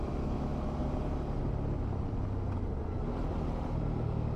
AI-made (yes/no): no